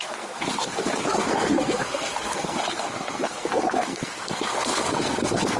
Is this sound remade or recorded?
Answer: remade